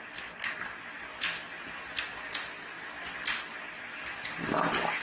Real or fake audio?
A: real